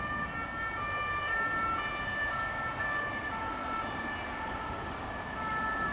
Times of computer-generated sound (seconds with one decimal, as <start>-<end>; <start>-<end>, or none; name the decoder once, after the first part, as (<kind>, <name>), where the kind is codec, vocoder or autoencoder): none